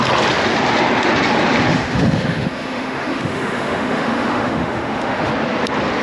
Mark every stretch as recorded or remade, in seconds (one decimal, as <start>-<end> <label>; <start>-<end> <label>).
0.0-1.7 recorded; 1.7-5.3 remade; 5.3-6.0 recorded